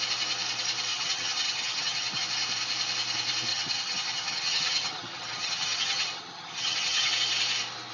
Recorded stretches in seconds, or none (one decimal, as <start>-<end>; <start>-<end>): 0.0-0.9; 2.2-3.5; 7.1-7.9